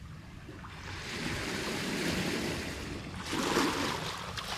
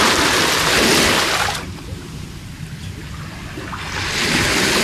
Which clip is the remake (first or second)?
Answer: first